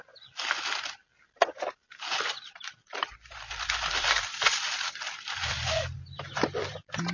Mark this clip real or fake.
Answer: real